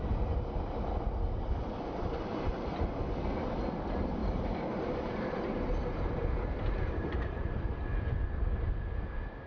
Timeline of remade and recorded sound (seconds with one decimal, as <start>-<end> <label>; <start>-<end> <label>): 0.0-4.2 recorded; 4.2-7.9 remade; 7.9-9.5 recorded